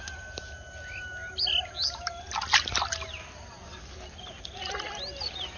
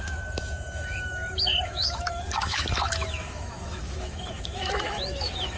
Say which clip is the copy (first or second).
second